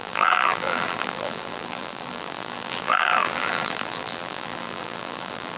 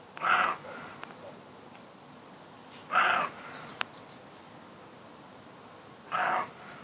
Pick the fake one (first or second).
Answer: first